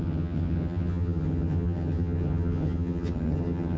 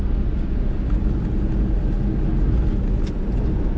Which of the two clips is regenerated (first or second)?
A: first